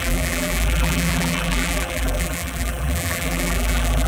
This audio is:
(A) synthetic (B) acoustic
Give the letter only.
A